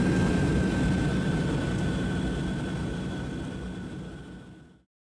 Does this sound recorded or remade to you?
recorded